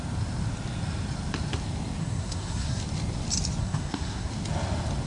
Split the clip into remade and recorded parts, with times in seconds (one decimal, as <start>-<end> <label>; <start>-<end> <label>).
0.0-2.0 recorded; 2.0-2.8 remade; 2.8-3.6 recorded; 3.6-4.3 remade; 4.3-5.1 recorded